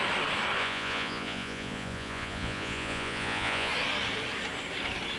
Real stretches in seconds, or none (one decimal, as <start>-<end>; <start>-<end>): 0.0-0.6; 3.7-5.2